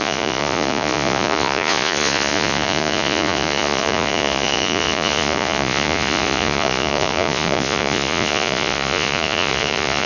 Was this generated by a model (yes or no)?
yes